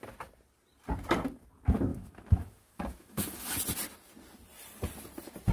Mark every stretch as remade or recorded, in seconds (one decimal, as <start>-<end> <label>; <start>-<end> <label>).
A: 0.0-1.9 recorded; 1.9-3.5 remade; 3.5-5.5 recorded